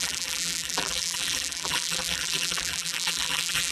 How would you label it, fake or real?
fake